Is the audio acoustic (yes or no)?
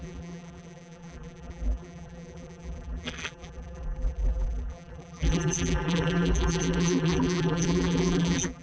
no